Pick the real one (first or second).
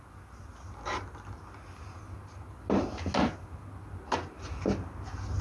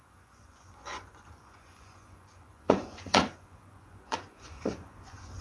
first